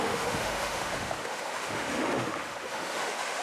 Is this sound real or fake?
fake